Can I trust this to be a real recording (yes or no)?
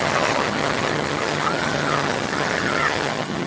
no